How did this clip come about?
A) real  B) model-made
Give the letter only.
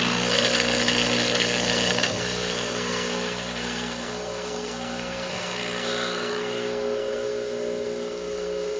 B